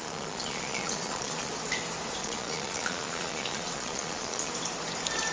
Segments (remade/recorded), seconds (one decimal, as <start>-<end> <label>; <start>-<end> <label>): 0.0-1.5 remade; 1.5-2.2 recorded; 2.2-4.5 remade; 4.5-5.3 recorded